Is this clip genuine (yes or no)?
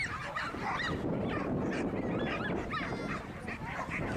yes